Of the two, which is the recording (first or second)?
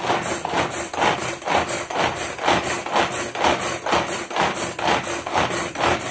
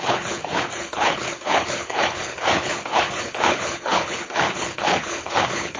first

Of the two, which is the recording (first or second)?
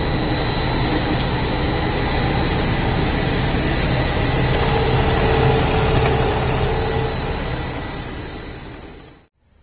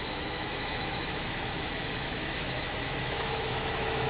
first